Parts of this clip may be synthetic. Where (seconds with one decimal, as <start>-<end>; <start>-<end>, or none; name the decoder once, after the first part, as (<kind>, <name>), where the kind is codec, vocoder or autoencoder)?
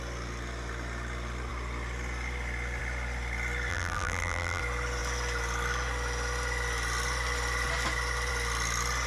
3.7-4.6 (vocoder, BigVGAN v2)